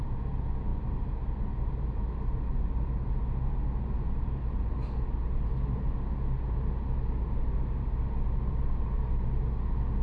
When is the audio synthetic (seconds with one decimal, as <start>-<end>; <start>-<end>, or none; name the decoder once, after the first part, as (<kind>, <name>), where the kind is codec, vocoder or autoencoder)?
none